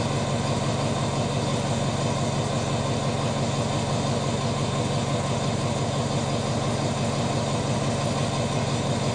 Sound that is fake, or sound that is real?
real